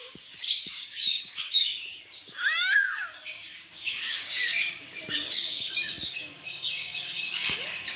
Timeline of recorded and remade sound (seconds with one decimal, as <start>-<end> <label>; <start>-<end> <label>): 0.0-8.0 remade